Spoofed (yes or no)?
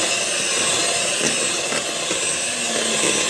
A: no